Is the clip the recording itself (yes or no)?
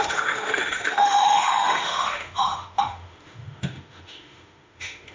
no